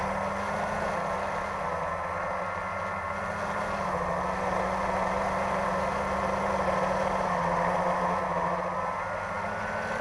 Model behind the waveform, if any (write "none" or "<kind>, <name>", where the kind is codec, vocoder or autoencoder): none